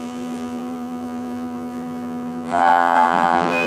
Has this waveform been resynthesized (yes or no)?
yes